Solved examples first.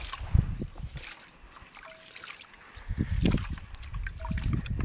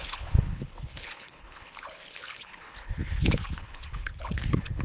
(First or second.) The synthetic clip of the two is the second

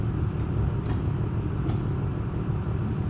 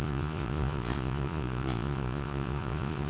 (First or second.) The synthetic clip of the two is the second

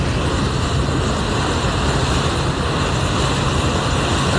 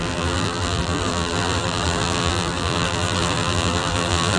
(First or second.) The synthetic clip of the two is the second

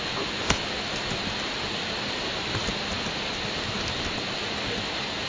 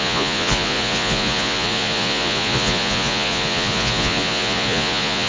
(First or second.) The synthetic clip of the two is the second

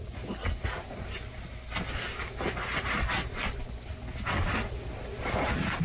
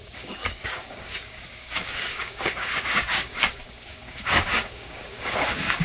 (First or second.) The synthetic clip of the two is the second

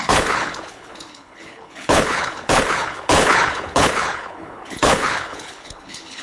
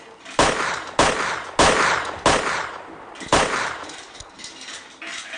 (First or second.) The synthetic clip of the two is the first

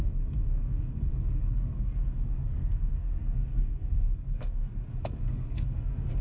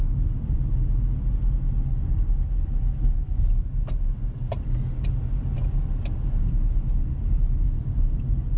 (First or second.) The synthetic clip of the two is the first